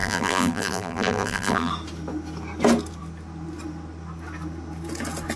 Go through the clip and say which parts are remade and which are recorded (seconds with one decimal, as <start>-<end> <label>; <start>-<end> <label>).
0.0-1.7 remade; 1.7-5.4 recorded